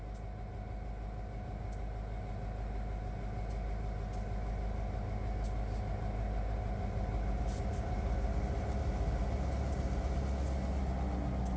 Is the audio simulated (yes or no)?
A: no